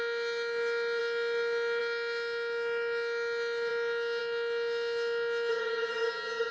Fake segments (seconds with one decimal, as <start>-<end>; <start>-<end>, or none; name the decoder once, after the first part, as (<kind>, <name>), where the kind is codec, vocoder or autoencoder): 5.5-6.5 (vocoder, HiFi-GAN)